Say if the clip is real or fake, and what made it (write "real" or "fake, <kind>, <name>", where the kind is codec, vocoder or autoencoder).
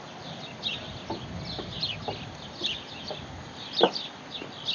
real